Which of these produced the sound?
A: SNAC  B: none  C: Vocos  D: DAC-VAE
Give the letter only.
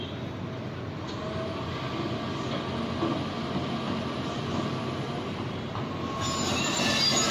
B